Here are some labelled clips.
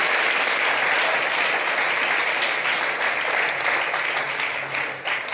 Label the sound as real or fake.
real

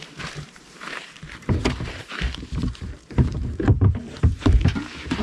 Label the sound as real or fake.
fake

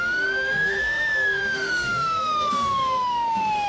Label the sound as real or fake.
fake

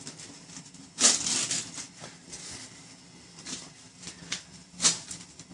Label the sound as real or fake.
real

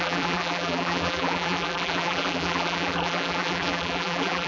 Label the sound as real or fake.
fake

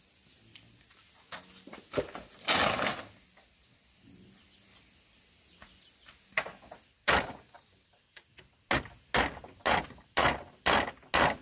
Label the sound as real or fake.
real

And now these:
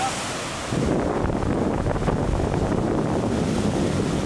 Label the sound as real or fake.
real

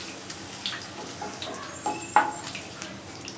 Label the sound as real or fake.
real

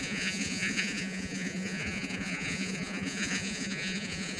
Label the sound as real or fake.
fake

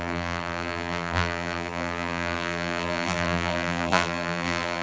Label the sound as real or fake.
fake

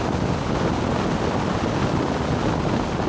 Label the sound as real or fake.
real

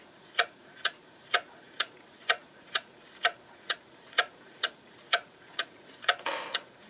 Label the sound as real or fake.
fake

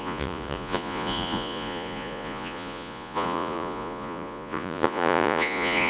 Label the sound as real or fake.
fake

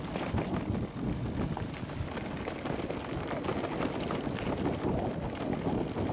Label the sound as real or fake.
real